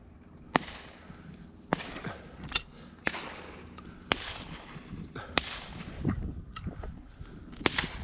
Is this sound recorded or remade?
recorded